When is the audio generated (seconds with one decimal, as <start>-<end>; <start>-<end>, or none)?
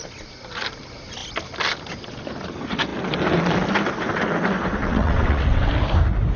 4.8-5.7